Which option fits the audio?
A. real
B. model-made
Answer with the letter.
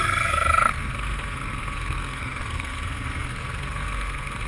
B